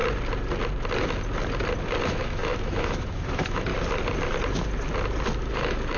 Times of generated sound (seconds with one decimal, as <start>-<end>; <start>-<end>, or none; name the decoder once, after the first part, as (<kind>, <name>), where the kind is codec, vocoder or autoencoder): 2.0-3.7 (autoencoder, DAC-VAE); 5.4-6.0